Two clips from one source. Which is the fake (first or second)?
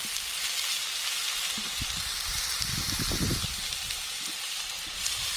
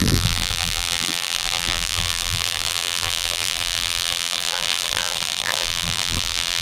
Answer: second